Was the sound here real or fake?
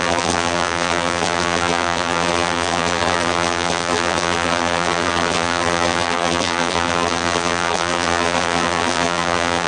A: fake